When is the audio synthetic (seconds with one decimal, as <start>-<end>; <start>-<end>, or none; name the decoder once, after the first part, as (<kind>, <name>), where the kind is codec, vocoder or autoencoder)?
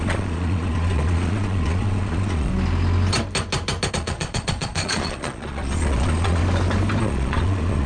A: 0.0-2.5 (vocoder, Vocos); 3.9-6.4; 7.0-7.9